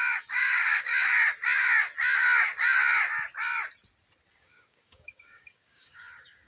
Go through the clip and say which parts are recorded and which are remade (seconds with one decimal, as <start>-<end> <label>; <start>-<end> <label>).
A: 0.0-0.9 remade; 0.9-4.3 recorded; 4.3-6.5 remade